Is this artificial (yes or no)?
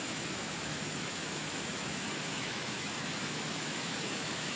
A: yes